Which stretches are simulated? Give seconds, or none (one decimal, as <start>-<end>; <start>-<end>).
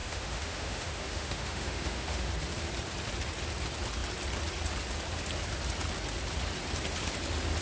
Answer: 0.0-2.3